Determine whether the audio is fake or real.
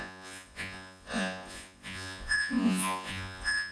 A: fake